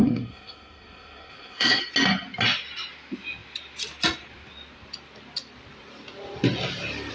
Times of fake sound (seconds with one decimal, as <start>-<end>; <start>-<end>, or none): 0.0-1.8